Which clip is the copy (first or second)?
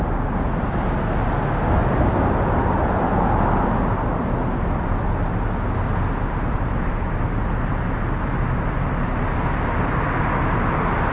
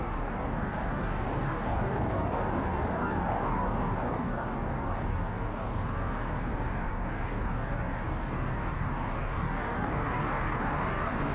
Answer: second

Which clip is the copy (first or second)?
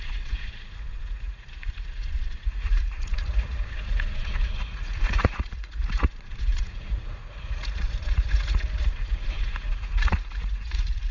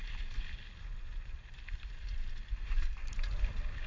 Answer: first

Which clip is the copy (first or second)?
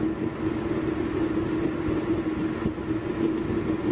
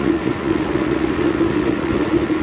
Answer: second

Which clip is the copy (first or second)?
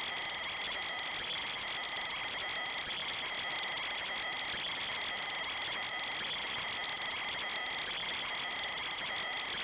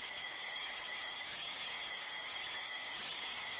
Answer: second